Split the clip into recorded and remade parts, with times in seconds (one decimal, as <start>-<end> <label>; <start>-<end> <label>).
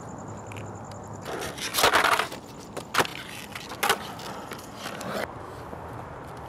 0.0-6.5 recorded